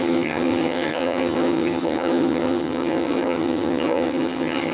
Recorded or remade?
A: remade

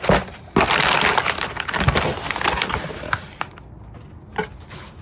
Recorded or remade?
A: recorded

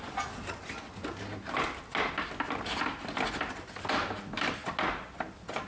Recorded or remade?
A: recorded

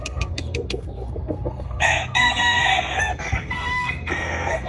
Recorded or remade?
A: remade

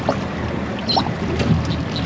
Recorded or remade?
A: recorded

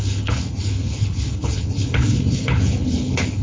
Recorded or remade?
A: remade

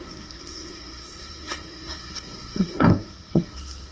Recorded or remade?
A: remade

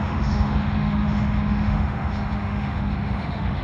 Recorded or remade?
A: remade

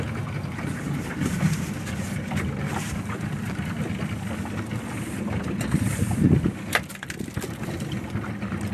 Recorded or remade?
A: recorded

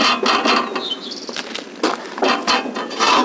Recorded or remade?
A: recorded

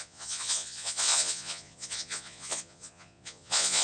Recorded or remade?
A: remade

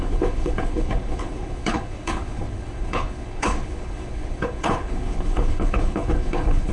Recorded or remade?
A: remade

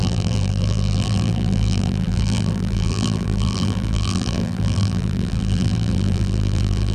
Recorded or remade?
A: remade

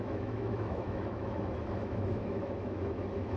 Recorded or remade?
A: remade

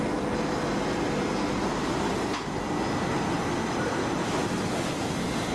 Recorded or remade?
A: recorded